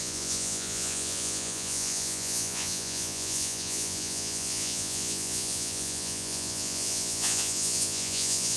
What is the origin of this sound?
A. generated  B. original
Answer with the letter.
A